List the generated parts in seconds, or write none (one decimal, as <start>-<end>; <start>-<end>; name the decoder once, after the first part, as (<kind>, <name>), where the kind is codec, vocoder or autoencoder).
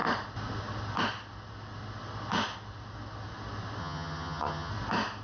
3.8-4.7 (vocoder, HiFi-GAN)